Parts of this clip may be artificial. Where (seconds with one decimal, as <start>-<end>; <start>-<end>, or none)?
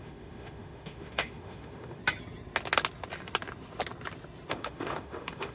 0.0-2.0; 4.5-5.5